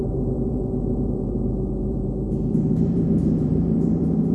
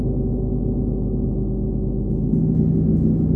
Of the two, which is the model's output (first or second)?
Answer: first